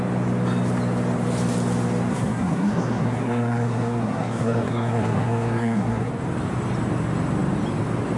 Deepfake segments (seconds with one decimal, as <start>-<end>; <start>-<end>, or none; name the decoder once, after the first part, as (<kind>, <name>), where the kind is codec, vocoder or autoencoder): 2.1-6.1 (codec, SNAC)

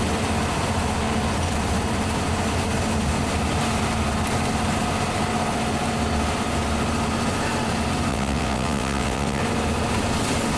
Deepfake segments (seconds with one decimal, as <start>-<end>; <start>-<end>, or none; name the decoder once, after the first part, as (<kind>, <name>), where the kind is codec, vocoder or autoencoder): 8.1-9.4 (vocoder, WaveNeXt)